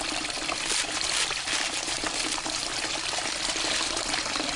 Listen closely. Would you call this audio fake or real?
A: real